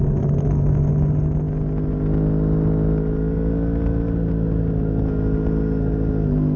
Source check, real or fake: real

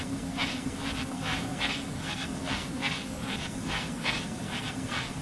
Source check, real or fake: fake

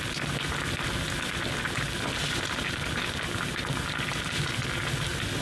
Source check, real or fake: real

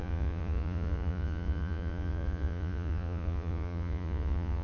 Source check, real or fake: fake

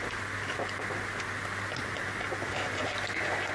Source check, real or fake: real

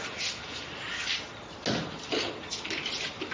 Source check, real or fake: real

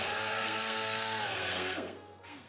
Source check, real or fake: fake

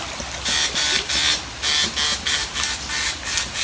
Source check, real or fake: real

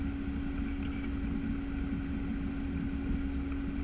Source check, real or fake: real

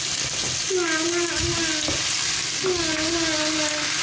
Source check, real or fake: real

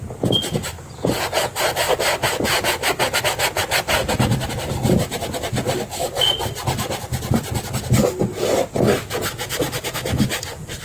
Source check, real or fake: real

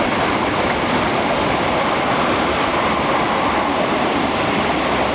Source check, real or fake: real